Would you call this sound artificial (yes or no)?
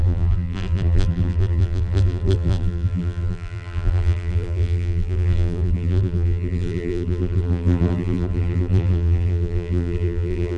yes